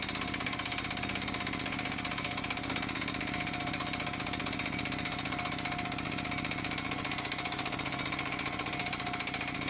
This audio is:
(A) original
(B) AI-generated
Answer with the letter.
A